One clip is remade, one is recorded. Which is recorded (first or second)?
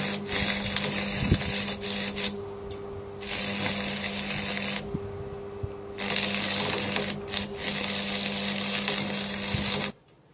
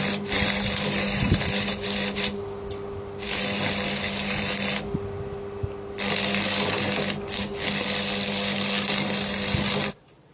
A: first